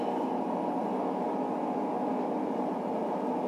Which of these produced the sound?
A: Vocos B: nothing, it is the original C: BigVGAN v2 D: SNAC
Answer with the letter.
B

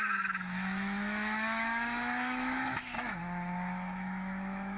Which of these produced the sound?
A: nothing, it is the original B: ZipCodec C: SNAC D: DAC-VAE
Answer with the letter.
D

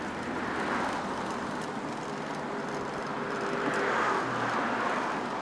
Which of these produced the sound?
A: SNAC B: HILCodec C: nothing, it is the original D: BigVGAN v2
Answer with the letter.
C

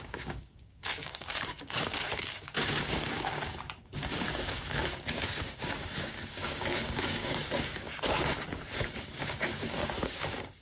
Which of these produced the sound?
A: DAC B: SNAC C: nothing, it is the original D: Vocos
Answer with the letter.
A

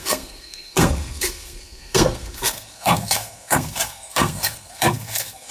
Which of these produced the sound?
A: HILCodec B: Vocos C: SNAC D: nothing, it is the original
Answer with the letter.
C